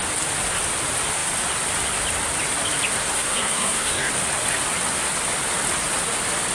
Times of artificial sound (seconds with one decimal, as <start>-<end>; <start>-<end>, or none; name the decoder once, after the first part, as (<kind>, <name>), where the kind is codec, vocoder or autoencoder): 3.0-4.1 (codec, SNAC)